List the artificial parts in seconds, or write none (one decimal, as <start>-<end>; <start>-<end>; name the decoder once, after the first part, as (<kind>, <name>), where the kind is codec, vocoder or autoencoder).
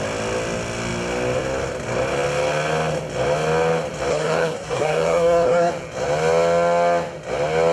4.1-5.7 (codec, SNAC)